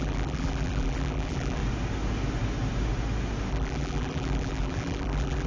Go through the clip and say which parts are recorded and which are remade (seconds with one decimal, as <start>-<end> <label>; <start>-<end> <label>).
0.0-1.6 remade; 1.6-3.5 recorded; 3.5-5.5 remade